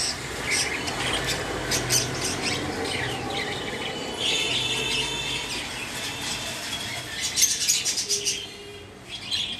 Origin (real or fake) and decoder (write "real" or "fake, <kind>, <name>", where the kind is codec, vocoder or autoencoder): real